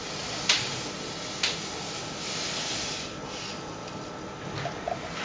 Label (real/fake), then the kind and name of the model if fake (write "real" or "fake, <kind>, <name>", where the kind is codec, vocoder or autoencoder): real